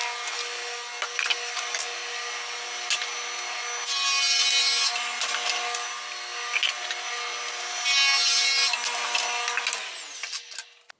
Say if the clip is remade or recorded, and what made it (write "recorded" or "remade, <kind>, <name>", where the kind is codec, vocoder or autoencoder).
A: recorded